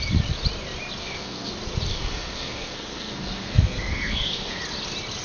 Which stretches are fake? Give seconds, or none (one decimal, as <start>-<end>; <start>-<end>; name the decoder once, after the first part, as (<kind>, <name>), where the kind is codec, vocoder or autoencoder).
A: 1.0-1.5 (codec, SNAC); 1.9-4.6